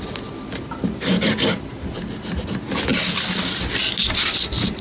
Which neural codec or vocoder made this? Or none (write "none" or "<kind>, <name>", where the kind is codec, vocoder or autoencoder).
none